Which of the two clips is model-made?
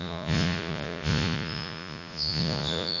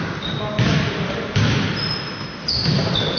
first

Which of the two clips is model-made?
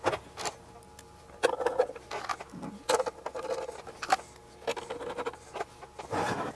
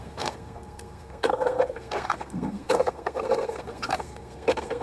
second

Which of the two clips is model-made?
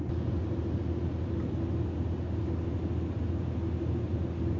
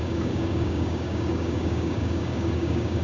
second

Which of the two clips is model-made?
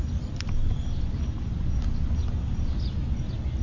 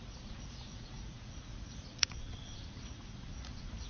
second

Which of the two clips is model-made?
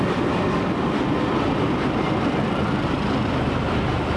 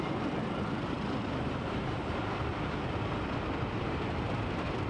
second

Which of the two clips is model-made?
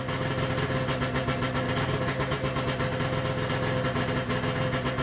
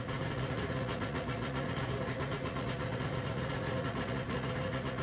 second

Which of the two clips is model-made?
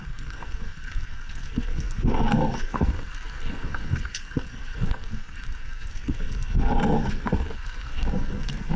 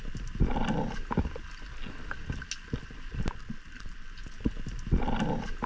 first